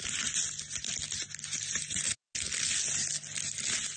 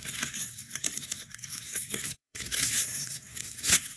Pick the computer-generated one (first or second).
second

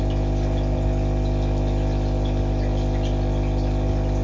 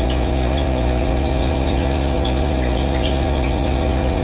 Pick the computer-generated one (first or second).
second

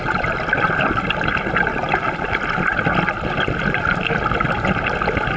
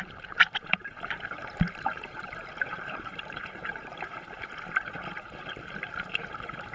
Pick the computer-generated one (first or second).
second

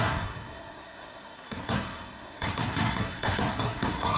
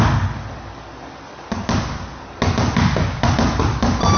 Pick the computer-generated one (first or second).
first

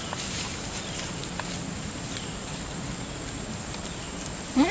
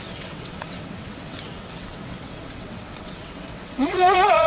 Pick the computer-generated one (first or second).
second